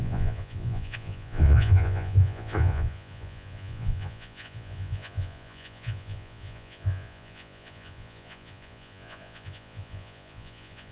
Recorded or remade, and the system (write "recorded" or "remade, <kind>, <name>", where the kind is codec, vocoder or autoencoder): remade, vocoder, Vocos